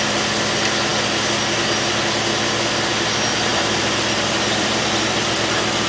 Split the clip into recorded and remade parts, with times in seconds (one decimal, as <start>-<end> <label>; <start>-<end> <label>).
0.0-3.5 recorded; 3.5-4.9 remade; 4.9-5.9 recorded